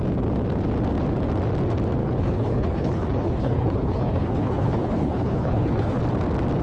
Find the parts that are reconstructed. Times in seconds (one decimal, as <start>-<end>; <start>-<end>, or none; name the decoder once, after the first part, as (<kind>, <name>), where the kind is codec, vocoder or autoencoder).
2.0-6.0 (codec, HILCodec)

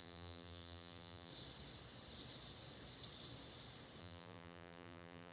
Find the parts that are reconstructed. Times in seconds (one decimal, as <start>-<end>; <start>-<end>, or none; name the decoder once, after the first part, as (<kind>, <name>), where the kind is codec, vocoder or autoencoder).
0.0-1.3 (vocoder, BigVGAN v2); 4.0-5.3

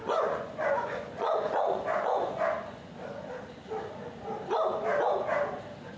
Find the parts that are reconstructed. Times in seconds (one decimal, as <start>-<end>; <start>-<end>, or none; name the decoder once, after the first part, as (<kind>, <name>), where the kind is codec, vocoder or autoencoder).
0.0-2.9 (vocoder, Vocos)

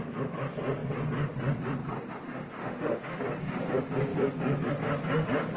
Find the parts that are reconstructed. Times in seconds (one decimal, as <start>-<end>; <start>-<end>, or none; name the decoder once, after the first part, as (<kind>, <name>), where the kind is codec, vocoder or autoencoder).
2.6-3.2 (autoencoder, DAC-VAE)